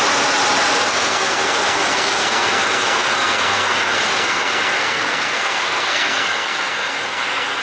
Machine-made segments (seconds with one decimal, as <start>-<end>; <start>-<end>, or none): 0.8-7.6